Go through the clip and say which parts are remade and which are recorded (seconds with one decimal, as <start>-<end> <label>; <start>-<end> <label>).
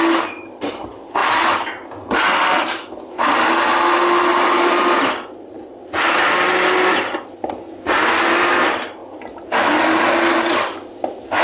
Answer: 0.0-11.4 recorded